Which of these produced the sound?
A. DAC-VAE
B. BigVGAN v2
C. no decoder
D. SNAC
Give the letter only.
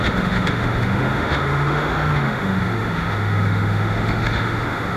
A